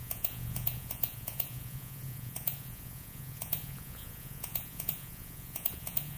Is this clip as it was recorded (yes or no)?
no